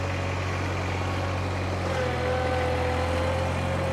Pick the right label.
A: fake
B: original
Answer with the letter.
B